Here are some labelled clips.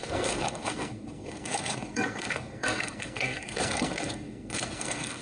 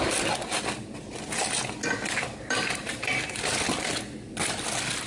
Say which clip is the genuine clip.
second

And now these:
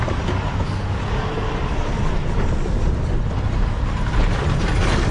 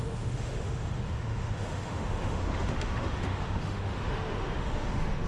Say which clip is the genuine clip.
first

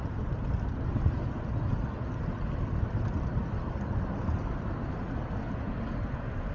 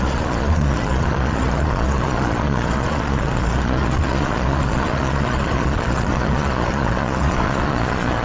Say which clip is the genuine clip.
first